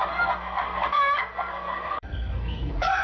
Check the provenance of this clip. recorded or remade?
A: remade